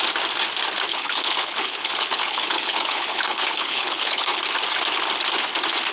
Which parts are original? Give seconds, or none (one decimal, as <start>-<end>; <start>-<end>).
0.0-0.9; 4.4-5.9